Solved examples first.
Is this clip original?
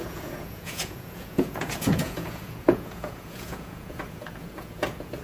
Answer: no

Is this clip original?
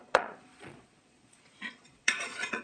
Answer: no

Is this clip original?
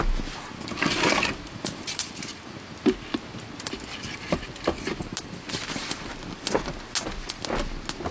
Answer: yes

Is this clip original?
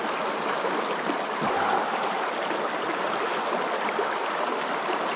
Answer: yes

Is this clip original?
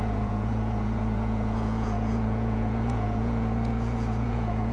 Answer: no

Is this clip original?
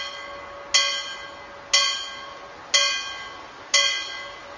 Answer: yes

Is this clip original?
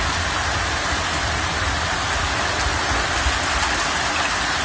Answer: yes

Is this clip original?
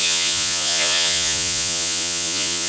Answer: no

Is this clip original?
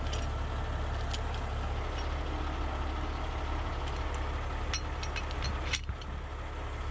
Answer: yes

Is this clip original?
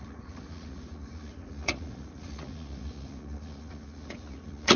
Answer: no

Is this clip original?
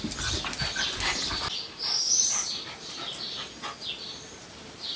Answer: yes